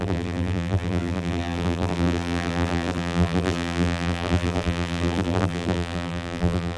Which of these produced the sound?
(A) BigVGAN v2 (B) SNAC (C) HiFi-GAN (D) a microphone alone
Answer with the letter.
A